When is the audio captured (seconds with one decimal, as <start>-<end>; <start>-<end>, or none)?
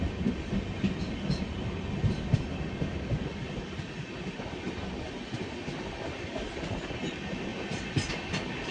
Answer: 0.0-8.7